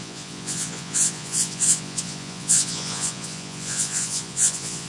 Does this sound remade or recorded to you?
remade